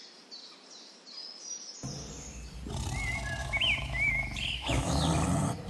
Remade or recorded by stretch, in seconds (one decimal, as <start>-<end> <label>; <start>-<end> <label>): 0.0-3.4 recorded; 3.4-5.0 remade; 5.0-5.7 recorded